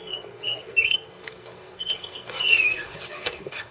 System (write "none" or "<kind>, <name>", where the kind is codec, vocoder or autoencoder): codec, SNAC